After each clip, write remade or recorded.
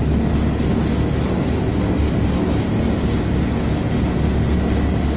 recorded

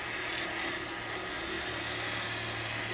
recorded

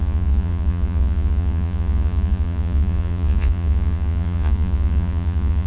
remade